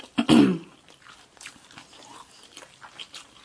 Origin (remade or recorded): recorded